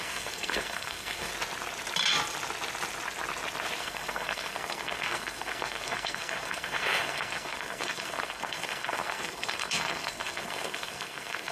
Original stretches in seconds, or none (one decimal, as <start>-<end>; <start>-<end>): 1.3-3.8